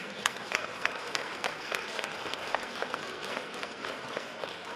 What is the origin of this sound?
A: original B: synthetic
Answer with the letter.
B